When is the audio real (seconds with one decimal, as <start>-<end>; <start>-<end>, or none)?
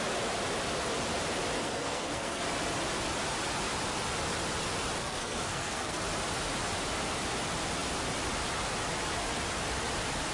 0.0-1.6; 2.4-5.0; 6.0-10.3